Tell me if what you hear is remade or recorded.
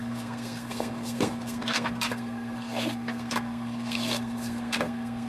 remade